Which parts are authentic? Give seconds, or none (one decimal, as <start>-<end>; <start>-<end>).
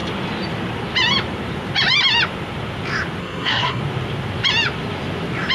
0.0-3.2; 3.8-5.5